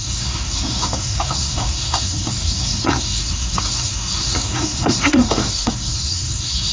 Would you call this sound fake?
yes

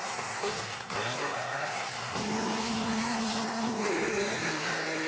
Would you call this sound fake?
yes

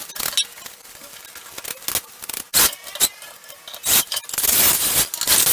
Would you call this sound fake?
no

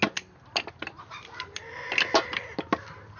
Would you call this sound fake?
no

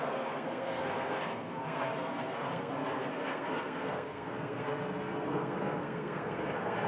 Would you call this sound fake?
yes